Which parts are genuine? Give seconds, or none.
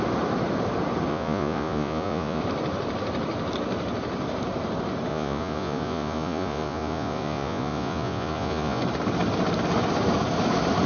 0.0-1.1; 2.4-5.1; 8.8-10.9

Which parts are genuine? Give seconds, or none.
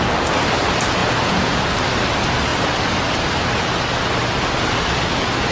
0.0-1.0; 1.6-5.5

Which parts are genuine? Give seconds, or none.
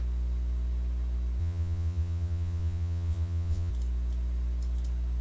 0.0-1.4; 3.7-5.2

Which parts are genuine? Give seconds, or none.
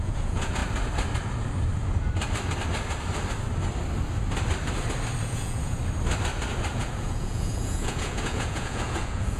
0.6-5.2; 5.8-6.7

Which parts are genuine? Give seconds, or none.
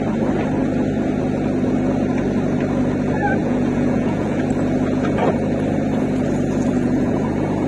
0.0-3.4; 4.4-6.7; 7.2-7.7